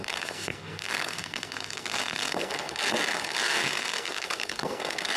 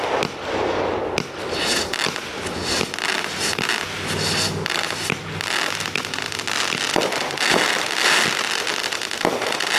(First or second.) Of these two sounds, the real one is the second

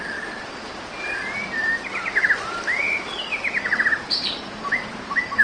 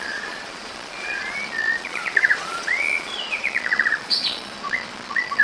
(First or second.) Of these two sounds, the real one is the first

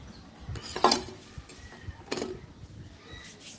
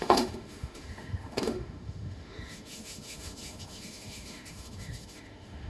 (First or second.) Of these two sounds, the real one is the first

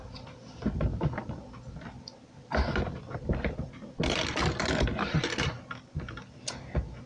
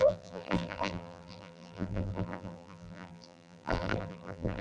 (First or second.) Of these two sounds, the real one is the first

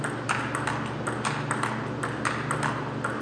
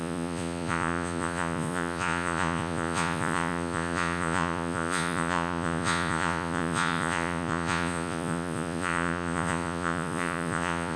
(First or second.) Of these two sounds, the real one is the first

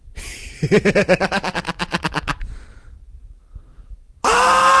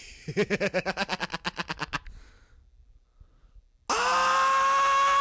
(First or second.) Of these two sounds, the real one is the second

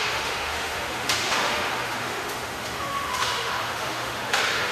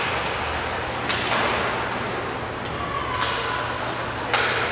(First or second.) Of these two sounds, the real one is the second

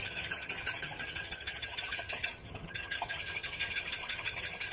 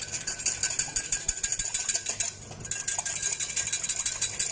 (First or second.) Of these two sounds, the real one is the second